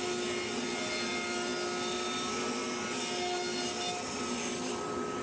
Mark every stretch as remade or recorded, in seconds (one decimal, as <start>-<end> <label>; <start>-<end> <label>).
0.0-5.2 recorded